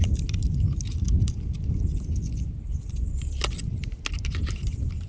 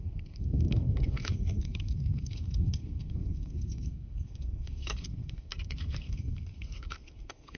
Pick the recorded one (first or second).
first